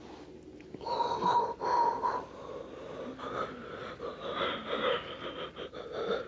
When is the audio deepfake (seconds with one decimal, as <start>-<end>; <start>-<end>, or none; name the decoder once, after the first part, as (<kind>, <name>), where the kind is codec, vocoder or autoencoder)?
none